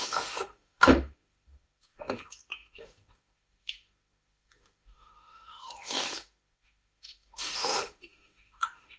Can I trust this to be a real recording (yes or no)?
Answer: no